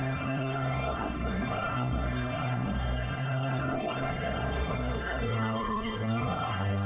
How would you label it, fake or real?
fake